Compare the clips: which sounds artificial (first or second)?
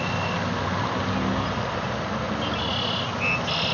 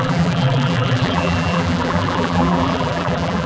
second